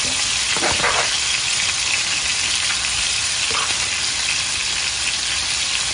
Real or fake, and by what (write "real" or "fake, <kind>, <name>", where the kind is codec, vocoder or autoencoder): real